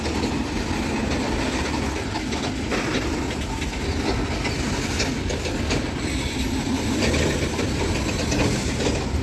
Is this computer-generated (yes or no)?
no